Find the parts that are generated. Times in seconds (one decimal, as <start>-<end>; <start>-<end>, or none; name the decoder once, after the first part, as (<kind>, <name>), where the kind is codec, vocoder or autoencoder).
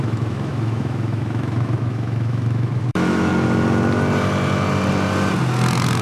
0.0-3.3 (autoencoder, DAC-VAE)